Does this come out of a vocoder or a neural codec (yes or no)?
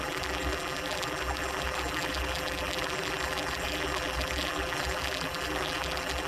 yes